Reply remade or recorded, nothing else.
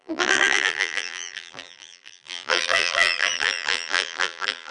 remade